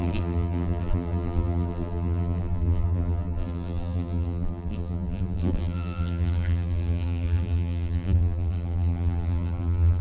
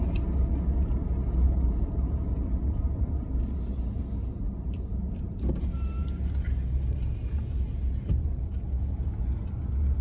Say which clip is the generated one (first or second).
first